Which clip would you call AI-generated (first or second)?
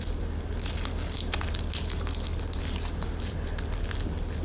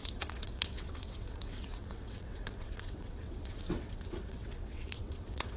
second